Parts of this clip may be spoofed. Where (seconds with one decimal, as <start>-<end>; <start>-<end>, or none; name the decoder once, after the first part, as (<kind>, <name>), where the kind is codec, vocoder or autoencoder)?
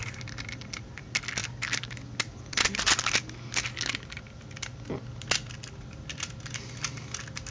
none